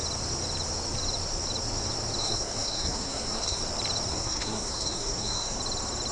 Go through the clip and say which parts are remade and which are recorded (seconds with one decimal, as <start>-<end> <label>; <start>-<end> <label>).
0.0-2.2 recorded; 2.2-3.6 remade; 3.6-4.1 recorded; 4.1-5.6 remade; 5.6-6.1 recorded